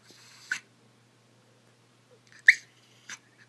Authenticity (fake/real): real